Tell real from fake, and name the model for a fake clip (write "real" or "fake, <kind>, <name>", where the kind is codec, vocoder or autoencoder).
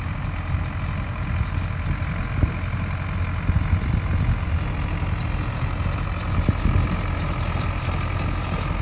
real